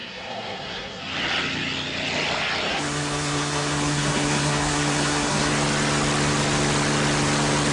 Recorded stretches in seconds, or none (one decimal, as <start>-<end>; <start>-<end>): 1.0-2.7; 5.5-7.7